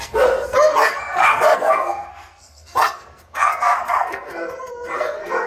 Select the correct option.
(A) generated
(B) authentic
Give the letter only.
A